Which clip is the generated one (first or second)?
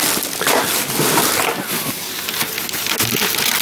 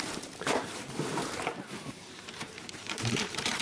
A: second